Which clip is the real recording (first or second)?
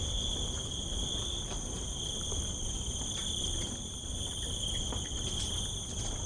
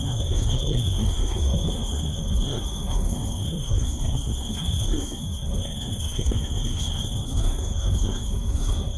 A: first